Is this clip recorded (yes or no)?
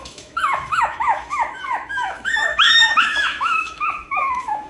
no